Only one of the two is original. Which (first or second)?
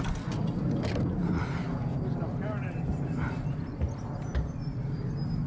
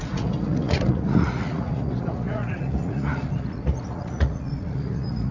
first